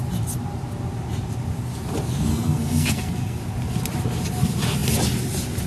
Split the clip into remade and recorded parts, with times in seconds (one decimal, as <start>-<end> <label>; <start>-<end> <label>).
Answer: 0.0-2.3 recorded; 2.3-3.4 remade; 3.4-5.7 recorded